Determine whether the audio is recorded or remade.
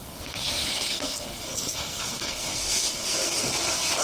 remade